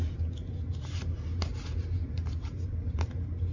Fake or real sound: real